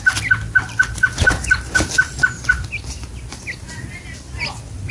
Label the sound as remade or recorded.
recorded